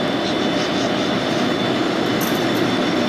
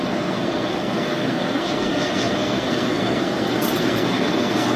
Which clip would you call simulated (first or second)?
second